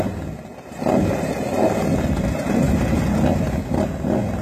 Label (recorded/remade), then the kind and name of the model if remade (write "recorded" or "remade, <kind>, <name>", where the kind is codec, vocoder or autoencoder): recorded